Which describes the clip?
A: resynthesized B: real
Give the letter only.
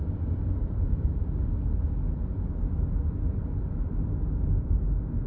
B